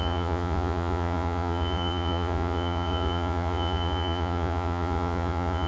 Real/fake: fake